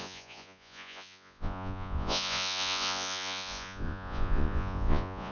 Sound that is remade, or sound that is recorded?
remade